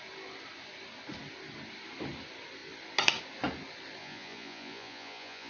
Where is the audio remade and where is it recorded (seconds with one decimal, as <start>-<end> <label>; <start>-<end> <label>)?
0.0-4.0 recorded; 4.0-5.5 remade